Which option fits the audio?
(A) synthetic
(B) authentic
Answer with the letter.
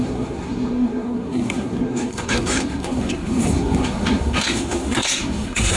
A